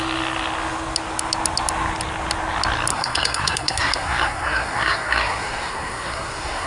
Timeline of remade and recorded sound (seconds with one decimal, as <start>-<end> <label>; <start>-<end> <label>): 0.0-2.9 recorded; 2.9-6.7 remade